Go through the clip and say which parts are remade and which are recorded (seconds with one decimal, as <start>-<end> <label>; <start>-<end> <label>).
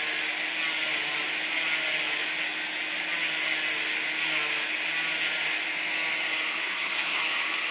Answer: 0.0-6.6 recorded; 6.6-7.2 remade; 7.2-7.7 recorded